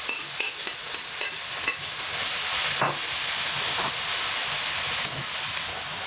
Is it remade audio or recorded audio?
recorded